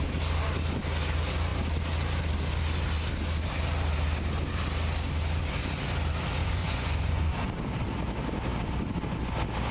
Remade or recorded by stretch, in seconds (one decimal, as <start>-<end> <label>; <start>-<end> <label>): 0.0-6.4 recorded; 6.4-7.3 remade; 7.3-9.7 recorded